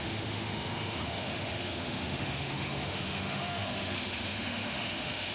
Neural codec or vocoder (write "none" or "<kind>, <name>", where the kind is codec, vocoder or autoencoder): autoencoder, DAC-VAE